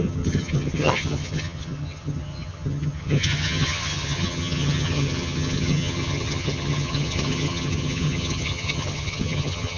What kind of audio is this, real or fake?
fake